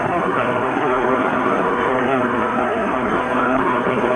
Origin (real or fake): fake